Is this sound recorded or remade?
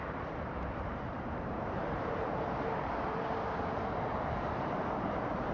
remade